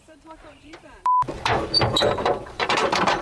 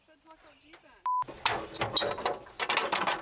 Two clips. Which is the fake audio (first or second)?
first